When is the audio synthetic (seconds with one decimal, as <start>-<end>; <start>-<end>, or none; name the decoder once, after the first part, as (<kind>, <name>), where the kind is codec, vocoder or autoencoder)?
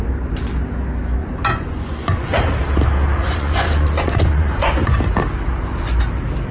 1.2-2.4 (vocoder, Vocos); 3.2-5.0